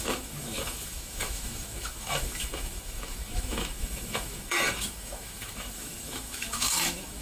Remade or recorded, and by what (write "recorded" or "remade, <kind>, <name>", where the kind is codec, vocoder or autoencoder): remade, autoencoder, DAC-VAE